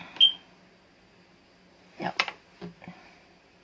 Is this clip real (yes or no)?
yes